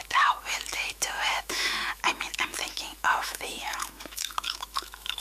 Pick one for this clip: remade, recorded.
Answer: remade